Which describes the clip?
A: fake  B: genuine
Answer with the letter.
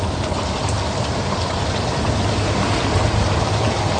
A